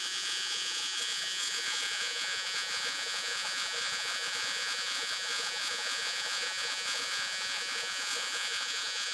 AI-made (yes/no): yes